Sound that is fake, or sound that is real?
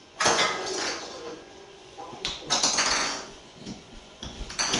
fake